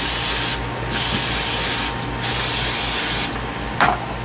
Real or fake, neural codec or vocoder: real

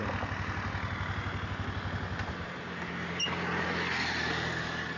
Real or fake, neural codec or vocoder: real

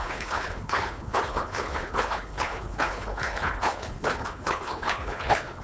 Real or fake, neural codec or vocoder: fake, codec, HILCodec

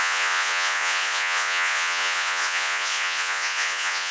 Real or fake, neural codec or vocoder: fake, vocoder, Vocos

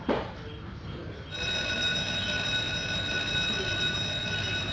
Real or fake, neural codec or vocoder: real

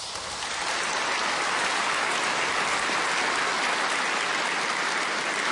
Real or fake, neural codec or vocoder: real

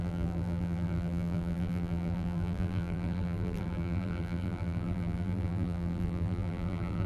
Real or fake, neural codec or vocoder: fake, vocoder, BigVGAN v2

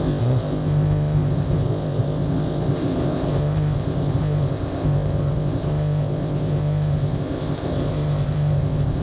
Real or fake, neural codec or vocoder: fake, codec, ZipCodec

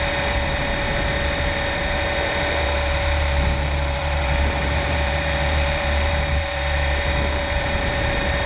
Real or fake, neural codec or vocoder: fake, vocoder, BigVGAN v2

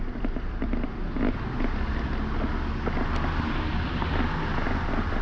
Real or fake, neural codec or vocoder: real